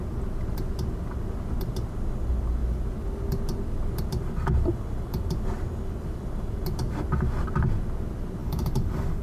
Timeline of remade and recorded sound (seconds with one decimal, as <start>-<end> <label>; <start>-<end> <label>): 0.0-8.4 recorded; 8.4-9.2 remade